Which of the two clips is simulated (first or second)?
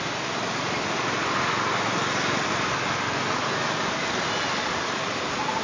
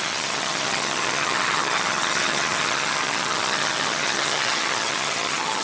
second